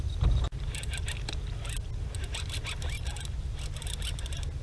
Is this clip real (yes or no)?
yes